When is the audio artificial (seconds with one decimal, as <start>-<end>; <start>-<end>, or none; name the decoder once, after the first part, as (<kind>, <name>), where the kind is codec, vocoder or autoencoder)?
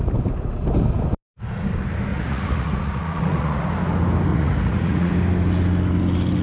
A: 2.1-3.7 (vocoder, Vocos); 4.3-5.1